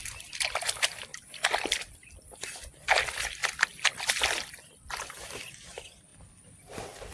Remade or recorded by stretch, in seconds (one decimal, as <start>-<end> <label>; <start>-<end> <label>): 0.0-3.4 remade; 3.4-4.1 recorded; 4.1-6.1 remade; 6.1-7.1 recorded